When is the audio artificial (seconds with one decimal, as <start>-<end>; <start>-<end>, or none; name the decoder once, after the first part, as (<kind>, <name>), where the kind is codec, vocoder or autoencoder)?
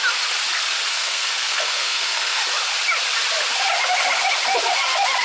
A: 0.9-2.4 (codec, SNAC)